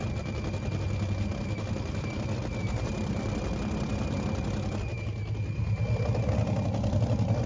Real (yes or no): yes